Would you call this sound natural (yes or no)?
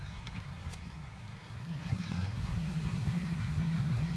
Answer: no